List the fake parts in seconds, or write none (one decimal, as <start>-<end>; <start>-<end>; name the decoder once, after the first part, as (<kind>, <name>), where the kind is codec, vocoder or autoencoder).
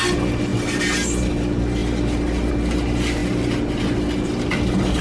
none